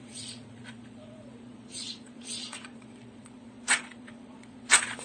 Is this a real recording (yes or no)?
no